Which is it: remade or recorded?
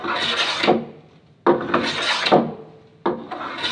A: recorded